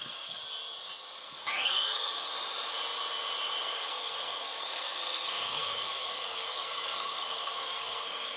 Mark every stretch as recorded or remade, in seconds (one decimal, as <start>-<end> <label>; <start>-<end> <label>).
0.0-0.4 remade; 0.4-1.2 recorded; 1.2-2.3 remade; 2.3-3.6 recorded; 3.6-8.4 remade